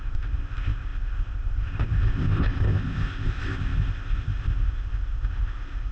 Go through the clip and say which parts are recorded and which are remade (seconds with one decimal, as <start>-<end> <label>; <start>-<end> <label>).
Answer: 0.0-5.9 remade